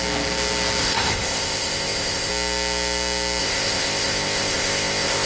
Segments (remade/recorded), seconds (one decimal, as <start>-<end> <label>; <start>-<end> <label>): 0.0-0.8 recorded; 0.8-2.3 remade; 2.3-3.4 recorded; 3.4-5.3 remade